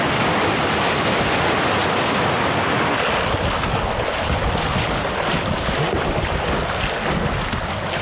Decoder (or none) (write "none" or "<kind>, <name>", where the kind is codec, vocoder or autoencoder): none